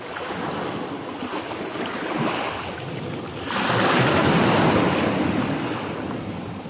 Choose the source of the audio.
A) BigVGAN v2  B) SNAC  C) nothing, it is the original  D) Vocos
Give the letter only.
C